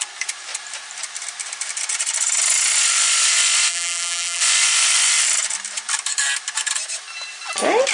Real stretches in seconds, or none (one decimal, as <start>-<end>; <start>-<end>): 0.0-3.7; 4.4-7.9

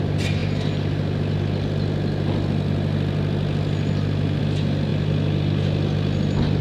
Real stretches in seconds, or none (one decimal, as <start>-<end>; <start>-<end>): 0.0-6.6

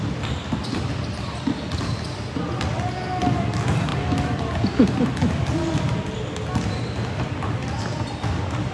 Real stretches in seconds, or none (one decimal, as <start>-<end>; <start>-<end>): 0.0-8.7

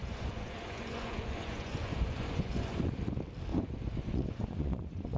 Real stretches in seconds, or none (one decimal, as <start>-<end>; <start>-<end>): 3.0-3.5